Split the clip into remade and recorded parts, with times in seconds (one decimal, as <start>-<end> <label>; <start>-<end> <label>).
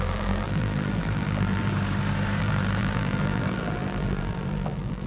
0.0-1.7 remade; 1.7-2.4 recorded; 2.4-5.1 remade